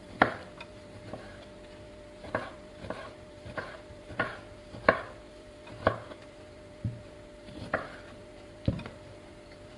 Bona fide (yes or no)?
no